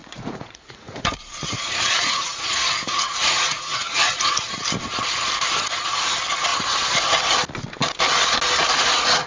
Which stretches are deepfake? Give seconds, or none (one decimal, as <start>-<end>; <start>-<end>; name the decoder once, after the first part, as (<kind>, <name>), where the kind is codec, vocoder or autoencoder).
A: 0.0-4.5 (vocoder, Vocos)